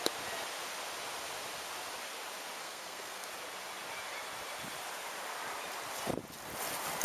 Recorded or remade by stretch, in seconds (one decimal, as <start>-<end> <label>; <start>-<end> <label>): 0.0-2.6 recorded; 2.6-3.3 remade; 3.3-7.0 recorded